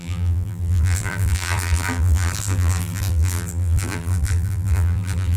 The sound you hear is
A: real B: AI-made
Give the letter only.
B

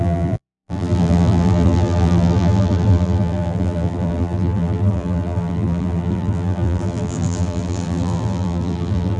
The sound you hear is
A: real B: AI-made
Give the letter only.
B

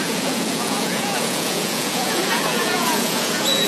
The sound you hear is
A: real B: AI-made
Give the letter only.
B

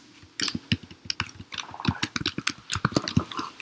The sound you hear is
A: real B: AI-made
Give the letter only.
A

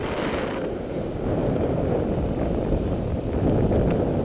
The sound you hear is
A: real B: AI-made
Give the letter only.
A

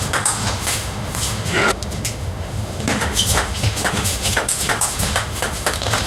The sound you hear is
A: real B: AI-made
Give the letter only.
B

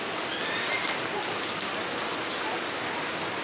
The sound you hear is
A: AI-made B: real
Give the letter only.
B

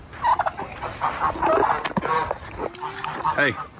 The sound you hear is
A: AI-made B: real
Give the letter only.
B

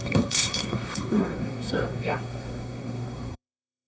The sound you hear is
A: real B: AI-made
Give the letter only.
B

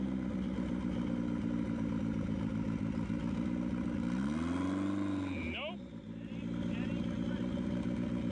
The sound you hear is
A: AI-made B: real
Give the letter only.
B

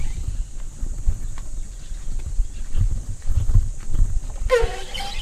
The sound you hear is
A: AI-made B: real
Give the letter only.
A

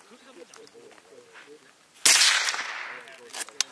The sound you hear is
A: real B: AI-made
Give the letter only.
A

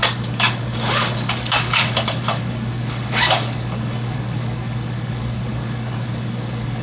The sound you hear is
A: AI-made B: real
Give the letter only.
A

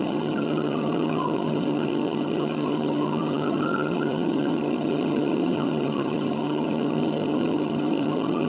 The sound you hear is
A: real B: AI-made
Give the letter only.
B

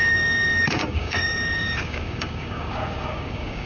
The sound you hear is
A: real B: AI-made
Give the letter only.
B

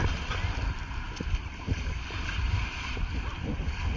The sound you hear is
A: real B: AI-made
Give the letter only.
A